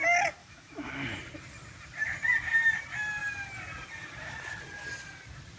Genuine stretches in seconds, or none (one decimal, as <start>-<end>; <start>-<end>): 0.0-0.4; 0.9-5.6

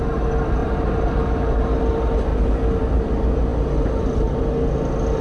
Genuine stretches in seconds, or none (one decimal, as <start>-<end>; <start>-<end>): 0.0-0.6; 1.8-2.3; 3.1-5.2

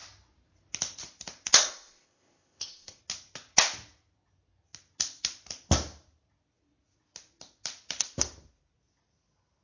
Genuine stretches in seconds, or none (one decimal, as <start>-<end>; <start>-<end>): 0.0-1.6; 3.0-9.6

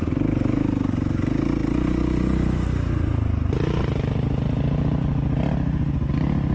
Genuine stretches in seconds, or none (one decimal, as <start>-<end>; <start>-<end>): 0.0-6.5

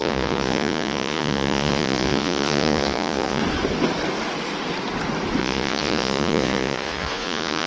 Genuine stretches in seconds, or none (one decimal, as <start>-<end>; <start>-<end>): 3.4-5.4